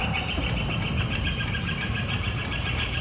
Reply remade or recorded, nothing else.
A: remade